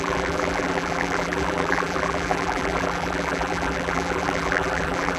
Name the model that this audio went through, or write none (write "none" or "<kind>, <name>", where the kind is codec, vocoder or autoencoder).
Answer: vocoder, BigVGAN v2